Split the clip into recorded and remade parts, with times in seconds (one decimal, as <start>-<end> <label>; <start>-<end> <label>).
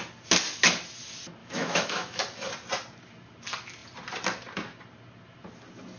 0.0-1.4 recorded; 1.4-2.2 remade; 2.2-6.0 recorded